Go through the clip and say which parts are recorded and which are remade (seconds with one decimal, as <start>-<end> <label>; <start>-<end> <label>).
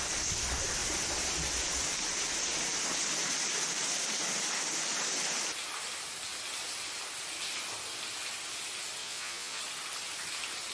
0.0-9.0 recorded; 9.0-9.6 remade; 9.6-10.7 recorded